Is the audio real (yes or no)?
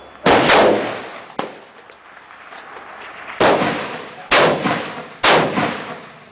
yes